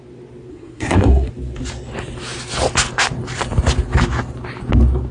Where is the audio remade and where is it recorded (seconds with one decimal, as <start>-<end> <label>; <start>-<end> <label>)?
0.0-0.5 recorded; 0.5-1.3 remade; 1.3-5.1 recorded